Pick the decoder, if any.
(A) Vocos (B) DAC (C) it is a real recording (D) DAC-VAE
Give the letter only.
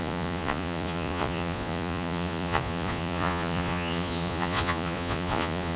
A